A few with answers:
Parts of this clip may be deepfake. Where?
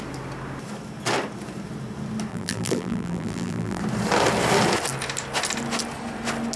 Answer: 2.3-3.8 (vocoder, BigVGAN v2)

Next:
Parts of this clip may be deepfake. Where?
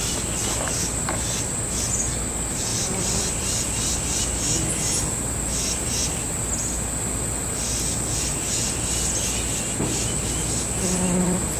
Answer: 2.7-3.6 (vocoder, BigVGAN v2)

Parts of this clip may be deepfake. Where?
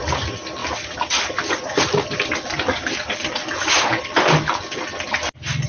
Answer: 0.0-0.6 (vocoder, BigVGAN v2); 1.7-2.8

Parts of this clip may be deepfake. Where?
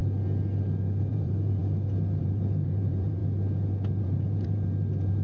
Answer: 1.1-1.6 (vocoder, BigVGAN v2); 2.2-3.2; 4.0-5.2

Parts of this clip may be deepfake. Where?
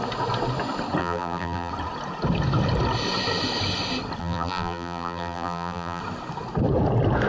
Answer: 1.0-1.7 (vocoder, BigVGAN v2); 4.2-6.0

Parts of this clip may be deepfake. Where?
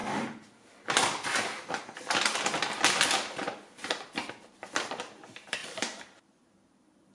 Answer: 4.3-7.1 (vocoder, BigVGAN v2)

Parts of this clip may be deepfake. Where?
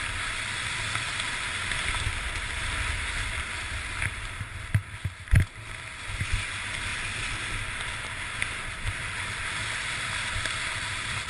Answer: none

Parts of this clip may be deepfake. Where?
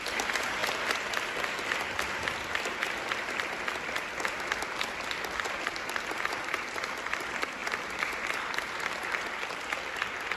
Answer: none